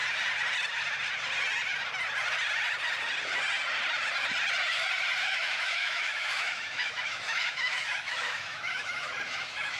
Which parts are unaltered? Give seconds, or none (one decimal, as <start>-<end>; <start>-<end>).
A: 0.0-5.2